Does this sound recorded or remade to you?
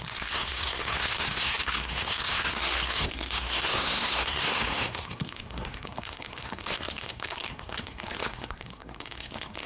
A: remade